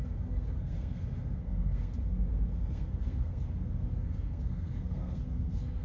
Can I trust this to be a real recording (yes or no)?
no